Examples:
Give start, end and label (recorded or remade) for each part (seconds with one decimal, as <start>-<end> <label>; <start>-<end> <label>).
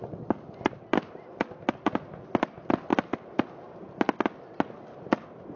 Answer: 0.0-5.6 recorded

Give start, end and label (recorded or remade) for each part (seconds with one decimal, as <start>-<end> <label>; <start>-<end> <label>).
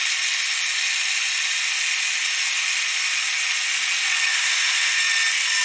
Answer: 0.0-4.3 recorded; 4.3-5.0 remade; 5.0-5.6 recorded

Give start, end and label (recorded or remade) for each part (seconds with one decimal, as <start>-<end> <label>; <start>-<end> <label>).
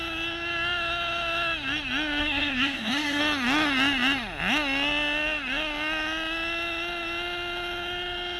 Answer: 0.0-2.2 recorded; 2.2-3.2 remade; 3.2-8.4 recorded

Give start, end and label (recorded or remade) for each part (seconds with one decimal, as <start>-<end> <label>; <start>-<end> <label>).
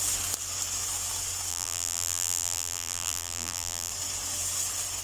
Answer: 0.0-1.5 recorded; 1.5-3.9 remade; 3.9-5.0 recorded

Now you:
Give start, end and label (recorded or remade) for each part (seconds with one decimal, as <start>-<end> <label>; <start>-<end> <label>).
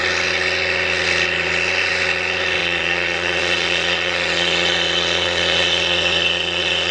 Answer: 0.0-2.6 recorded; 2.6-6.9 remade